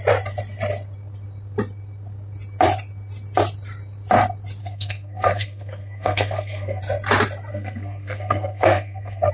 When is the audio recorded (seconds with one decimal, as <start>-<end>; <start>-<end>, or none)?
0.0-4.6; 6.8-7.5